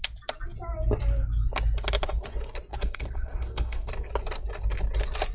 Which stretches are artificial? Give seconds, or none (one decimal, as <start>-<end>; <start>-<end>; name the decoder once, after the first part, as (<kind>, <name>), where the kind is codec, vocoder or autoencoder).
2.7-3.9 (codec, SNAC)